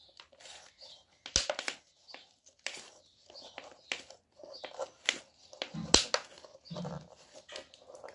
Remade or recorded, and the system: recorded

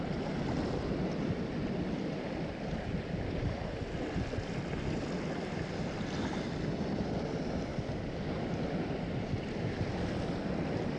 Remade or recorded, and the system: recorded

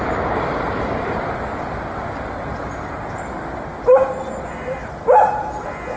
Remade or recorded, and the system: recorded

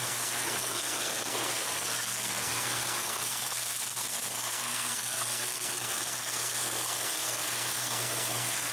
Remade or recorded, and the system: remade, codec, SNAC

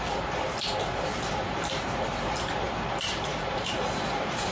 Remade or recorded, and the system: remade, vocoder, BigVGAN v2